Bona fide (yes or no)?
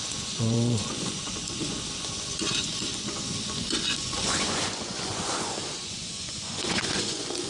no